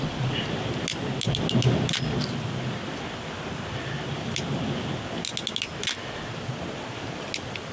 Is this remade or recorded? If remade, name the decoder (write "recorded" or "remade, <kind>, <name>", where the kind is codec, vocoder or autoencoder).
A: recorded